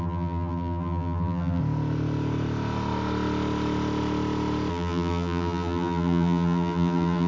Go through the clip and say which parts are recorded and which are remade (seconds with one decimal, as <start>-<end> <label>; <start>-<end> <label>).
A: 0.0-1.6 remade; 1.6-4.7 recorded; 4.7-7.3 remade